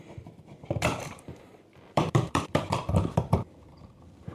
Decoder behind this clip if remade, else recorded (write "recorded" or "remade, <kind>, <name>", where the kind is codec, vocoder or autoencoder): remade, vocoder, BigVGAN v2